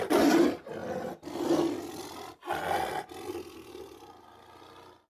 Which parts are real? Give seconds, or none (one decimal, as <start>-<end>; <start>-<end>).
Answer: 0.0-5.1